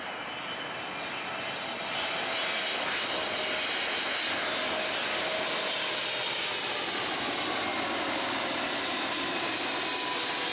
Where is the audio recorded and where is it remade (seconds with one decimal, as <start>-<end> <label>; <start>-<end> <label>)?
0.0-10.5 recorded